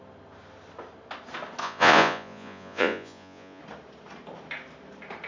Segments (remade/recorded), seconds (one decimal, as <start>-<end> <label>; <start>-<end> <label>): 0.0-1.6 recorded; 1.6-3.6 remade; 3.6-5.3 recorded

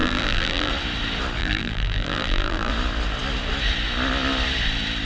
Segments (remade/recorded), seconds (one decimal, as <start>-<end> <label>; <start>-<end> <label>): 0.0-0.7 remade; 0.7-1.4 recorded; 1.4-2.7 remade; 2.7-5.0 recorded

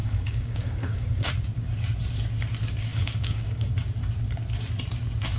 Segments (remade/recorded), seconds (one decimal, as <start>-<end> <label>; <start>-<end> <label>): 0.0-1.3 remade; 1.3-2.9 recorded; 2.9-3.7 remade; 3.7-5.4 recorded

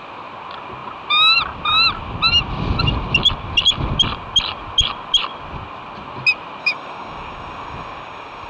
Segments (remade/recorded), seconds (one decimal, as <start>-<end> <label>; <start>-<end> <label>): 0.0-6.6 recorded; 6.6-8.5 remade

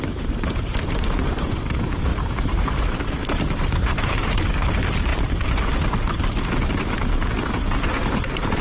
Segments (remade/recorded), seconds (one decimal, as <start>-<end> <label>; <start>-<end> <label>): 0.0-5.1 remade; 5.1-6.8 recorded; 6.8-8.6 remade

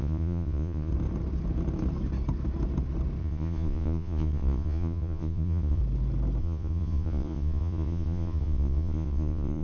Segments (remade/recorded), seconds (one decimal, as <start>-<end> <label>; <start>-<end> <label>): 0.0-0.9 remade; 0.9-3.2 recorded; 3.2-5.8 remade; 5.8-6.4 recorded; 6.4-9.6 remade